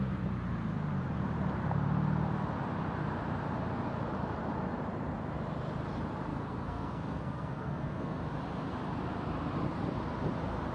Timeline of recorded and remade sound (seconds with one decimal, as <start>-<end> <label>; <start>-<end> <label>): 0.0-6.3 recorded; 6.3-8.2 remade; 8.2-10.7 recorded